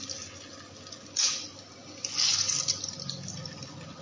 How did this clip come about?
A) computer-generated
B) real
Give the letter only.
B